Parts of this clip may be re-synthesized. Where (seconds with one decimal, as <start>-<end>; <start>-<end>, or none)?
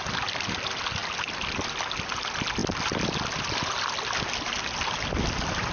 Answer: none